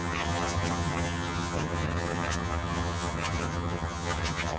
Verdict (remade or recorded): remade